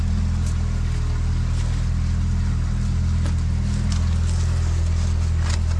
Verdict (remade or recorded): recorded